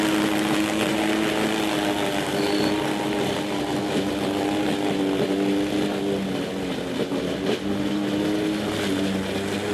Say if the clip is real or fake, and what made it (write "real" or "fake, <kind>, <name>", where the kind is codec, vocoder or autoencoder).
real